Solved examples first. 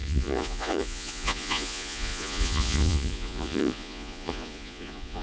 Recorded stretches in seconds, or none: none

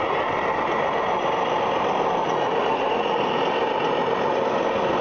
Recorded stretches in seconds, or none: 0.0-2.2; 3.4-5.0

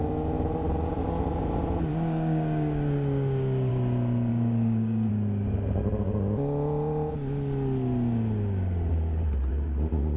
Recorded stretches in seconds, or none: 0.0-1.9; 3.7-4.3; 5.1-10.2

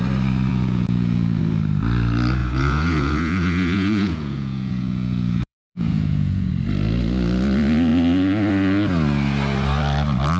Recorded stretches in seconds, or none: 0.0-0.5; 1.4-2.4; 6.5-10.4

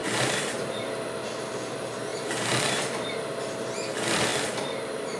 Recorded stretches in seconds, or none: 0.8-2.1; 3.5-5.2

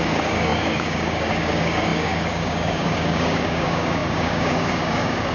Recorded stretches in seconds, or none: none

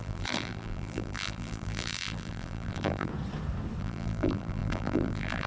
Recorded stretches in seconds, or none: 3.1-3.8